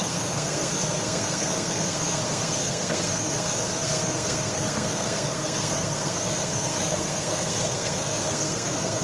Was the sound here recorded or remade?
remade